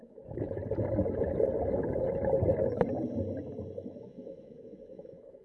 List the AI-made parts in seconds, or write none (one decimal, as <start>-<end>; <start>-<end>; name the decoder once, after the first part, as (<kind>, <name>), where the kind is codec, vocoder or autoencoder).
0.0-0.6 (autoencoder, DAC-VAE); 3.8-5.4